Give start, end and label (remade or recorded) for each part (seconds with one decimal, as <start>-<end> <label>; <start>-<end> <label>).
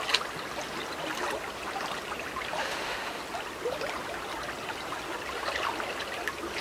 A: 0.0-2.6 recorded; 2.6-3.2 remade; 3.2-6.6 recorded